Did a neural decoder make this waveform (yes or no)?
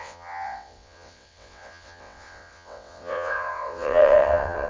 yes